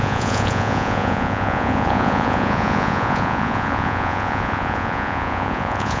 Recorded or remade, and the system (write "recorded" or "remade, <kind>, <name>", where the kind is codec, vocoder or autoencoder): remade, vocoder, Vocos